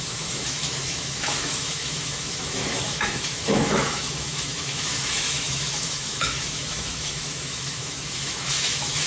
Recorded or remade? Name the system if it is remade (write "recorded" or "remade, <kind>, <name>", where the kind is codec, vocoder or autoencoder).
remade, autoencoder, DAC-VAE